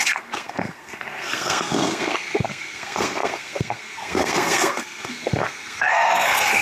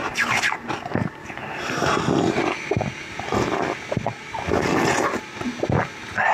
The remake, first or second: first